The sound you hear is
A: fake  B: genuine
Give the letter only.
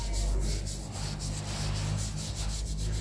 B